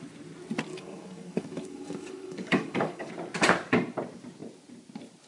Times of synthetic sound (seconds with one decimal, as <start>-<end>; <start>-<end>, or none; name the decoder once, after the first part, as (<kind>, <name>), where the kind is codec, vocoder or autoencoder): 0.7-3.1 (codec, DAC)